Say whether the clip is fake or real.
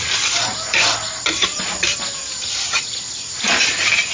real